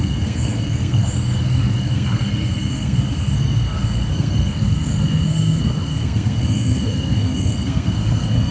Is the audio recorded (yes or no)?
no